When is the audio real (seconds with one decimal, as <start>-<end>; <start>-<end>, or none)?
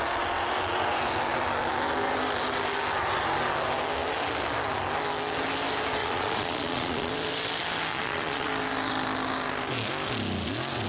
0.0-6.0; 7.1-7.9; 8.5-10.9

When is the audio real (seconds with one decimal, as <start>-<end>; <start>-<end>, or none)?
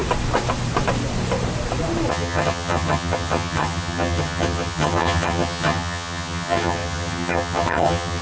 0.0-2.1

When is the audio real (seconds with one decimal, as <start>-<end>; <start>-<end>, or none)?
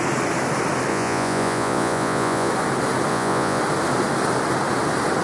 0.0-0.9; 2.5-3.1; 3.6-5.2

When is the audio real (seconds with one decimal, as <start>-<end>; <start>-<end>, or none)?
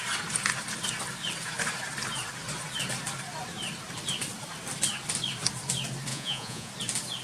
0.0-6.1; 6.7-7.2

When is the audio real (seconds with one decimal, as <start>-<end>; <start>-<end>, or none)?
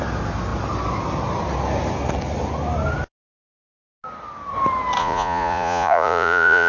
0.0-5.0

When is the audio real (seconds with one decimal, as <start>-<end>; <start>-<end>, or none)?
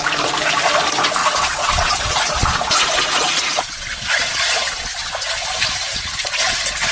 0.0-1.2; 5.1-6.9